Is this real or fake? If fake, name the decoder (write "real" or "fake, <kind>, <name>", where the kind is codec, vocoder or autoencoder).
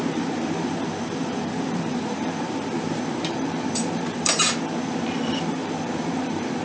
fake, vocoder, BigVGAN v2